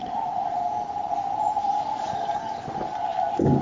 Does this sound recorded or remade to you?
recorded